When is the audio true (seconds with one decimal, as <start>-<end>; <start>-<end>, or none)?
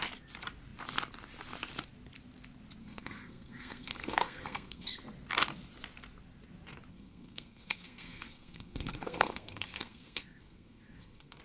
0.0-2.8; 5.0-6.9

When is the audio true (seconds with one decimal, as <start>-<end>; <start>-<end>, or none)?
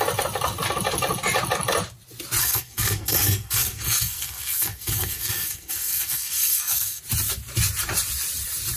0.0-2.4; 7.0-8.8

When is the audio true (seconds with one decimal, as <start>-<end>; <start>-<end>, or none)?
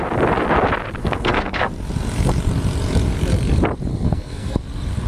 0.0-1.0; 1.7-3.9; 4.6-5.1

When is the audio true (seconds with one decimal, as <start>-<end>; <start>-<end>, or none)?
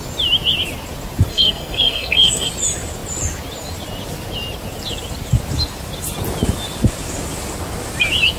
0.0-1.3; 2.5-8.4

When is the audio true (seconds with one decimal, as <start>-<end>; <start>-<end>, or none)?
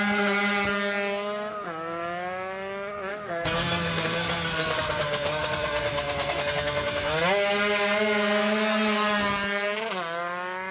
0.0-3.1; 7.1-10.7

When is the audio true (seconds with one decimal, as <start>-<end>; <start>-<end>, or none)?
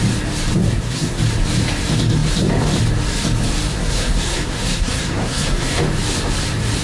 0.0-0.6; 1.2-3.7; 5.8-6.8